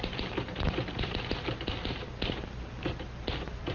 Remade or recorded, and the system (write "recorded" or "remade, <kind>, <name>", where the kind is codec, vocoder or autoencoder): remade, vocoder, BigVGAN v2